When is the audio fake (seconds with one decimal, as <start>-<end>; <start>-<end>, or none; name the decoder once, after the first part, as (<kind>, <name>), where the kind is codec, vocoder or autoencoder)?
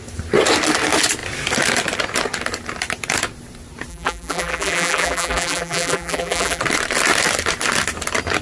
3.9-6.6 (vocoder, BigVGAN v2)